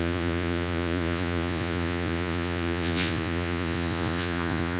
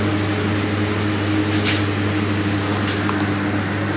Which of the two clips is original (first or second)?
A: second